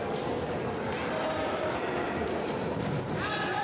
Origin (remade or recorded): recorded